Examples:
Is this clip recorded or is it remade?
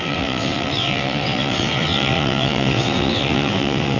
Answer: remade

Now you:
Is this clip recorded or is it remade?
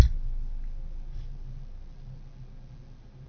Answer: recorded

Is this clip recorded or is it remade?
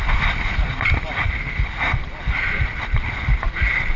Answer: recorded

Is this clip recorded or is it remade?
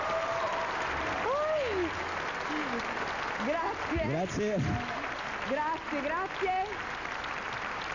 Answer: recorded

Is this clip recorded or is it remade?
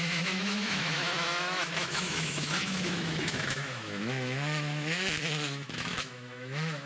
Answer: remade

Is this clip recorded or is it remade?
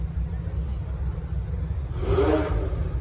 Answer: recorded